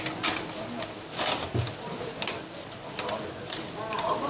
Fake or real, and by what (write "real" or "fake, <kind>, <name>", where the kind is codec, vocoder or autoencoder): real